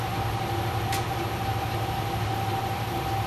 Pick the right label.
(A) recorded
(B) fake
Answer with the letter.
A